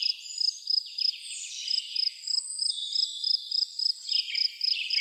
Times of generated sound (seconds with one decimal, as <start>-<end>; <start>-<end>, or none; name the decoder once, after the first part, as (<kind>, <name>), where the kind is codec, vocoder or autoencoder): 1.2-4.2 (vocoder, BigVGAN v2)